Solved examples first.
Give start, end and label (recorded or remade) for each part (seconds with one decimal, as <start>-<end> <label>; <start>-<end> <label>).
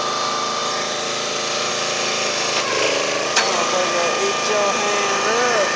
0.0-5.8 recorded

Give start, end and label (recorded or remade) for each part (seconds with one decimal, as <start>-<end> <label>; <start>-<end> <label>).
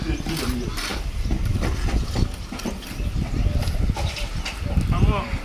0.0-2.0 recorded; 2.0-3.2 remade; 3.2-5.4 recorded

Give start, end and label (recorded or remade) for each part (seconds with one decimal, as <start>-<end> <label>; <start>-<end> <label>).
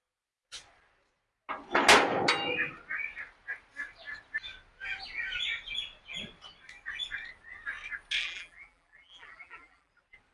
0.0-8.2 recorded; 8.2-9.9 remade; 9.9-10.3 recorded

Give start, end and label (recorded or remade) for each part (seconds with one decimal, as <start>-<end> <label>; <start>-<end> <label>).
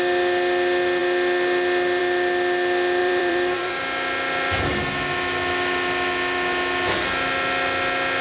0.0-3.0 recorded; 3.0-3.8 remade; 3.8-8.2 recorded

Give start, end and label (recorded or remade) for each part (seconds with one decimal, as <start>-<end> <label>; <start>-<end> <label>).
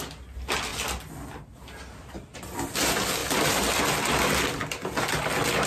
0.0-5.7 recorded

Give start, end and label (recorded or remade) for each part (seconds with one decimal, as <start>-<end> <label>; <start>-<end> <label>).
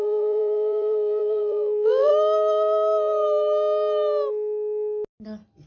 0.0-2.1 remade; 2.1-5.7 recorded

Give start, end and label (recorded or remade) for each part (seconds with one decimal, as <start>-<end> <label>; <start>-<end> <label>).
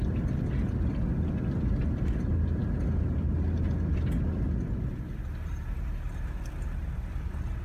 0.0-7.6 recorded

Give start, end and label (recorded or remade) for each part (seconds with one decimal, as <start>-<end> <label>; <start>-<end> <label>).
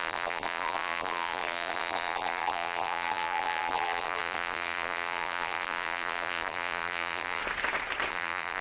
0.0-7.4 remade; 7.4-8.1 recorded; 8.1-8.6 remade